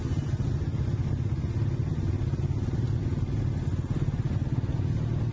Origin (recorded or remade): recorded